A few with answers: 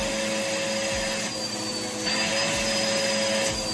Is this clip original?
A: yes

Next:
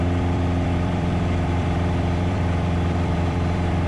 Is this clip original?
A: no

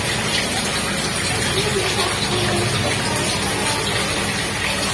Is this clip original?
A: yes